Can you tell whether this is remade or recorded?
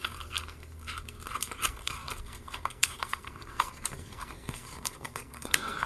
remade